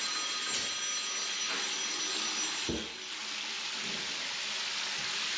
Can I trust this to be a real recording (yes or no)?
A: yes